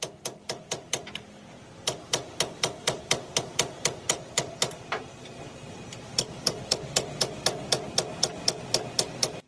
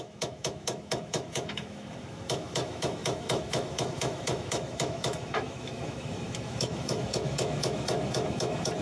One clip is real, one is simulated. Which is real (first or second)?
first